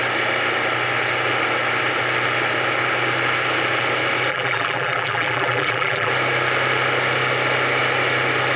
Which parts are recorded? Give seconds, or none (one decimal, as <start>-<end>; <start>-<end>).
0.0-4.3; 6.1-8.6